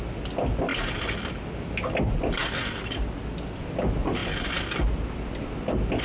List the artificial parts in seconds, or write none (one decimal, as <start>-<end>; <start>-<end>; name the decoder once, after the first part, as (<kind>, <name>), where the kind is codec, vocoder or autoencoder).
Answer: none